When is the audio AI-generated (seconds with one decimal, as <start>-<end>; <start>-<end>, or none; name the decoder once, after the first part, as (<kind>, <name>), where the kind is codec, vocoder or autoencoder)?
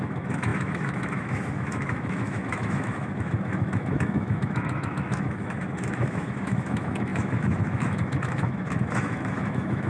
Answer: 0.0-9.9 (autoencoder, DAC-VAE)